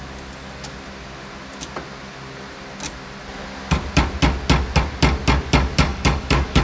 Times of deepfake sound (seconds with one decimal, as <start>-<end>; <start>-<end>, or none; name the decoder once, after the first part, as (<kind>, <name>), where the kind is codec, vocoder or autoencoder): 5.9-6.6 (codec, DAC)